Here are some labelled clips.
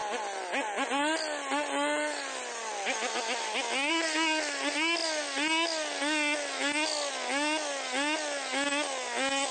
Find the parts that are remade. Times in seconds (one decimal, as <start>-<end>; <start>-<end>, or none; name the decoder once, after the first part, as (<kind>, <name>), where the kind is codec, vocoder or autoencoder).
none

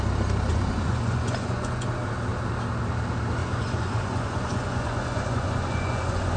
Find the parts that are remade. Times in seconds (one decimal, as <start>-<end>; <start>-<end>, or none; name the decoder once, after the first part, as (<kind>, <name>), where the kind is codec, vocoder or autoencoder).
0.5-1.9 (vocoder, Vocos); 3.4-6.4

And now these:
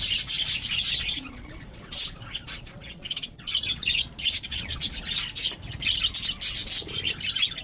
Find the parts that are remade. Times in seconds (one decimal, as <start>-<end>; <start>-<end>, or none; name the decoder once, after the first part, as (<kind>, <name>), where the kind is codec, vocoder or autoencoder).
0.4-5.0 (vocoder, Vocos)

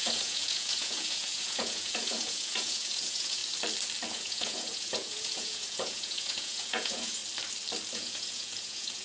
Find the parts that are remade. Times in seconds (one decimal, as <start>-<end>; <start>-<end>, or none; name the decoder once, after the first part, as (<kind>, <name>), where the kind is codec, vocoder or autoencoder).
0.0-3.4 (vocoder, Vocos); 4.1-7.2; 7.9-9.0

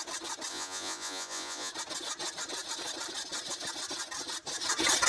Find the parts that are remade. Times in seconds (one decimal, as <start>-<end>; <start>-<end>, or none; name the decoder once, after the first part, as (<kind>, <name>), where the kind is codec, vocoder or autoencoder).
0.5-1.7 (vocoder, Vocos)

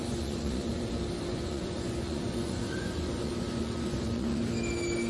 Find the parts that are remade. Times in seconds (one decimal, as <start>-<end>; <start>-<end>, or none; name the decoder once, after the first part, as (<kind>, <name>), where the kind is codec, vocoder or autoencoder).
0.0-0.9 (vocoder, Vocos); 1.3-4.4